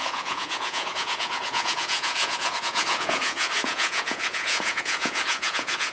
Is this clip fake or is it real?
fake